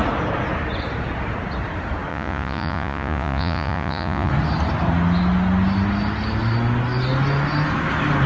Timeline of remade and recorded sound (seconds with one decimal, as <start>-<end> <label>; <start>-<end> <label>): 0.0-2.1 recorded; 2.1-4.3 remade; 4.3-8.3 recorded